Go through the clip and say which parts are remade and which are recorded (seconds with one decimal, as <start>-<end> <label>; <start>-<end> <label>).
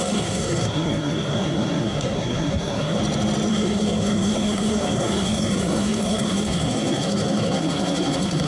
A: 0.0-3.0 remade; 3.0-3.5 recorded; 3.5-8.5 remade